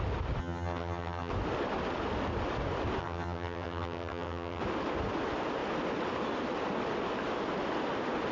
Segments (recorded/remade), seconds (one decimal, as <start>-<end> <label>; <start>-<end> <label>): 0.0-0.4 recorded; 0.4-1.3 remade; 1.3-3.0 recorded; 3.0-4.6 remade; 4.6-8.3 recorded

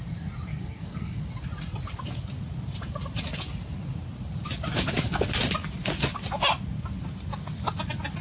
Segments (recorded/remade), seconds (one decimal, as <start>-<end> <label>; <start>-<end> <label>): 0.0-0.5 recorded; 0.5-1.2 remade; 1.2-8.2 recorded

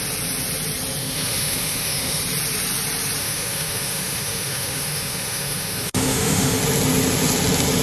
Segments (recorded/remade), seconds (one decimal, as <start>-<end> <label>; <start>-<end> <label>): 0.0-1.0 recorded; 1.0-2.2 remade; 2.2-3.2 recorded; 3.2-6.6 remade; 6.6-7.8 recorded

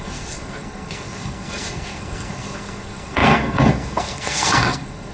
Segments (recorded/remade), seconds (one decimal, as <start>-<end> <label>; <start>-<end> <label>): 0.0-5.1 remade

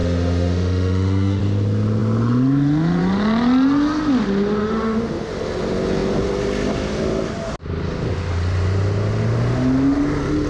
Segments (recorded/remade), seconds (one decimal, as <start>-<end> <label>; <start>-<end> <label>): 0.0-1.4 remade; 1.4-4.6 recorded; 4.6-5.3 remade; 5.3-10.5 recorded

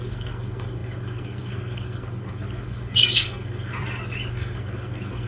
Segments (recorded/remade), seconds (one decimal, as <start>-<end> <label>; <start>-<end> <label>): 0.0-3.7 remade; 3.7-4.3 recorded; 4.3-5.3 remade

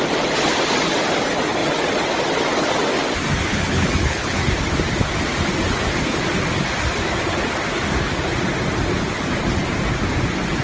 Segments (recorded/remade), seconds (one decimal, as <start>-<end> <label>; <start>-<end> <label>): 0.0-3.5 recorded; 3.5-4.4 remade; 4.4-10.6 recorded

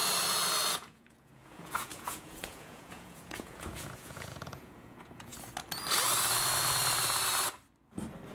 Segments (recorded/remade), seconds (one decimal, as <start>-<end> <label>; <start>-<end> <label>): 0.0-0.7 recorded; 0.7-5.3 remade; 5.3-8.3 recorded